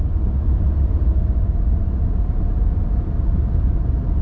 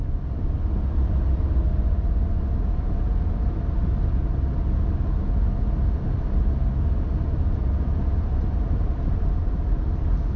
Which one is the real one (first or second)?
second